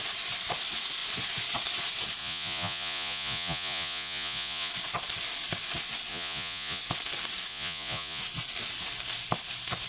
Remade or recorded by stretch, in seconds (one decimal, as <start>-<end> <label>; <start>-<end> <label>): 0.0-2.2 recorded; 2.2-4.7 remade; 4.7-6.1 recorded; 6.1-6.8 remade; 6.8-7.5 recorded; 7.5-8.2 remade; 8.2-9.9 recorded